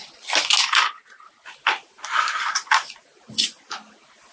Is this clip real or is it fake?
real